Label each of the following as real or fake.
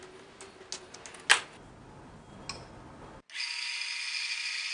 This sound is real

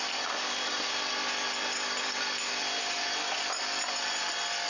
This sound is real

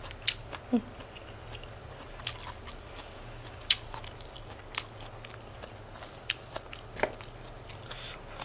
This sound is real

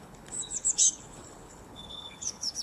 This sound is fake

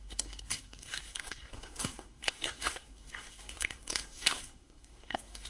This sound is fake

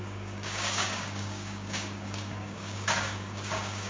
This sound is fake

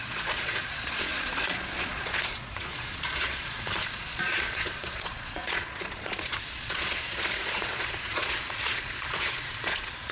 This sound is fake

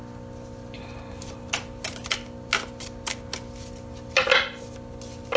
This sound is real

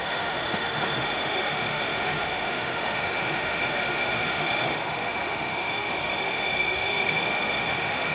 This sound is fake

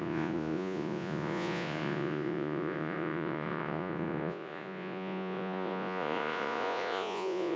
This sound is fake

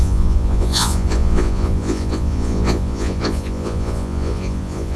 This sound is fake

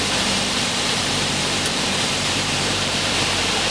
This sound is fake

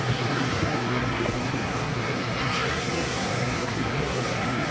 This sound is fake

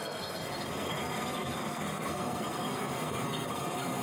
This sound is fake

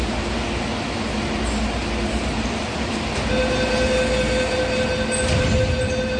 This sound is real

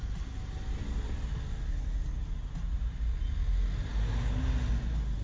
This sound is real